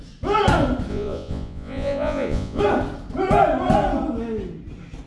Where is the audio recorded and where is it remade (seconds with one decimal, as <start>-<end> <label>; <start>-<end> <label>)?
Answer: 0.0-0.9 recorded; 0.9-2.6 remade; 2.6-5.1 recorded